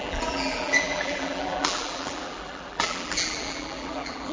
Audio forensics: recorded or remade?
remade